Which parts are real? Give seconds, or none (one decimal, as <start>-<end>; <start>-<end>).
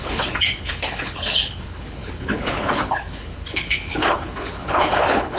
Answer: none